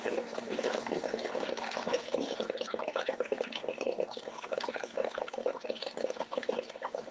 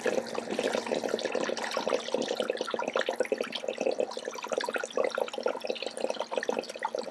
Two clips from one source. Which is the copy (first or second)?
first